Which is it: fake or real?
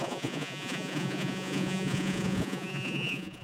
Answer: fake